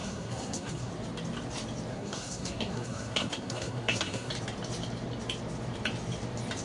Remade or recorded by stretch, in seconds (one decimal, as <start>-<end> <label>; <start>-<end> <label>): 0.0-0.9 remade; 0.9-1.9 recorded; 1.9-4.3 remade; 4.3-6.6 recorded